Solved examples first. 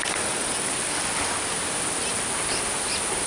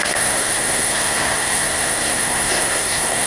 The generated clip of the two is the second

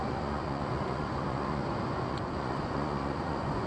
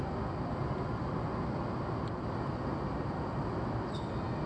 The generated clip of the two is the first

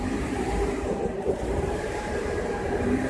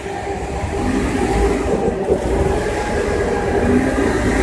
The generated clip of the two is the first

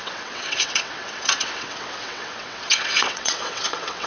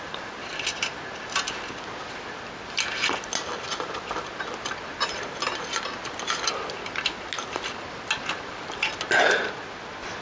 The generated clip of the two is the first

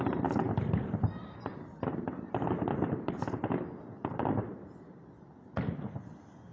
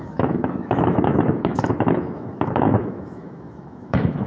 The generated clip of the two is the second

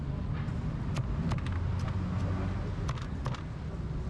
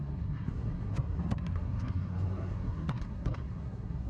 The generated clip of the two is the second